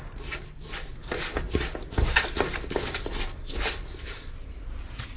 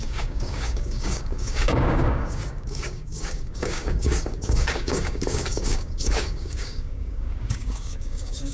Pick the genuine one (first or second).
first